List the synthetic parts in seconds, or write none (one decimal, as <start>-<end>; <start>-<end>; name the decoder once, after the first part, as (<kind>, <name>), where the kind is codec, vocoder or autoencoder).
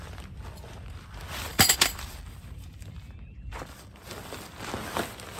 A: 1.5-4.7 (vocoder, BigVGAN v2)